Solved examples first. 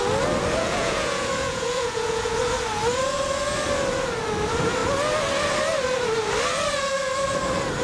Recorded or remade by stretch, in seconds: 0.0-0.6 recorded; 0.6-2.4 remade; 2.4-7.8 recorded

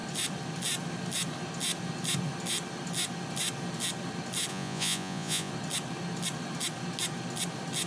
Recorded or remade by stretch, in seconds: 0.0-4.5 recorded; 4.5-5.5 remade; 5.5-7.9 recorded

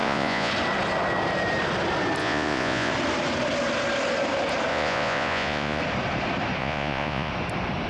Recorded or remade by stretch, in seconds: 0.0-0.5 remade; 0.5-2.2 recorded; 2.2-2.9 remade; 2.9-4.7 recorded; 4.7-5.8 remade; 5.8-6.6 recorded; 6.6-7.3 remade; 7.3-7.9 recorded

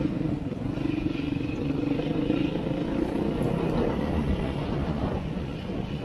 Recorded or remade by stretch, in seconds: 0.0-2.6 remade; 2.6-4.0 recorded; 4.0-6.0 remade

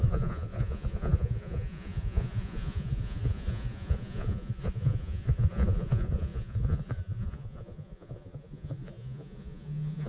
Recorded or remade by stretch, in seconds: 0.0-10.1 remade

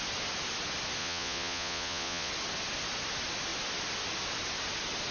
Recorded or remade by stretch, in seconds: 0.0-1.0 recorded; 1.0-2.3 remade; 2.3-5.1 recorded